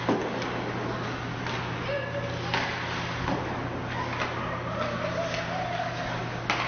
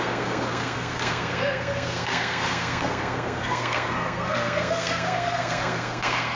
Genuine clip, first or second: first